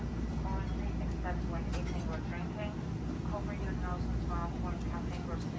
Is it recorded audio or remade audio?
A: recorded